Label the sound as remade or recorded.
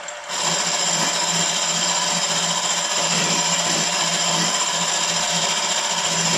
recorded